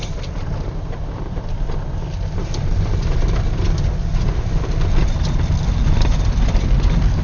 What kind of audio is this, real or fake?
fake